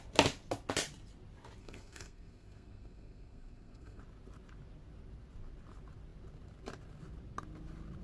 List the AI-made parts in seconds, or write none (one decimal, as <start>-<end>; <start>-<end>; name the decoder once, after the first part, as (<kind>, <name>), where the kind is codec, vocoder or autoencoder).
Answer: 1.6-4.0 (codec, SNAC)